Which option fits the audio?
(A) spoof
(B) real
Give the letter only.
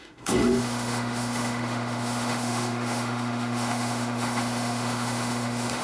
A